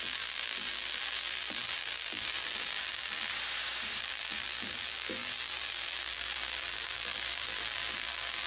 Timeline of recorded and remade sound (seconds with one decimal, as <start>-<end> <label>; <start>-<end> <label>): 0.0-3.3 remade; 3.3-4.0 recorded; 4.0-8.5 remade